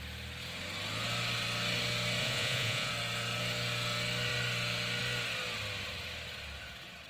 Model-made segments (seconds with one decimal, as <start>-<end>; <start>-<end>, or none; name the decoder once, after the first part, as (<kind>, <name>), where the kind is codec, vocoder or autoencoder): 2.2-2.9 (vocoder, Vocos)